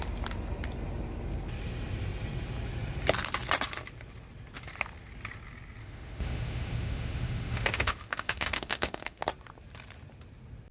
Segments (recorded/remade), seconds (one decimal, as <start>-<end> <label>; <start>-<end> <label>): 0.0-5.8 recorded; 5.8-9.2 remade; 9.2-10.7 recorded